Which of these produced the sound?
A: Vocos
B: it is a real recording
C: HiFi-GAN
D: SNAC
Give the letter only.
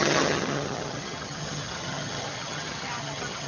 C